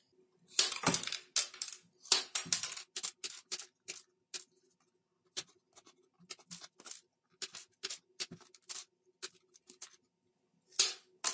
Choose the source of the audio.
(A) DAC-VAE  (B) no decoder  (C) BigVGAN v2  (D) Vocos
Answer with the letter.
B